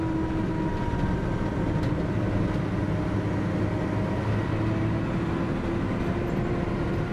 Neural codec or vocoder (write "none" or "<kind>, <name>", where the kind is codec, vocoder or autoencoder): none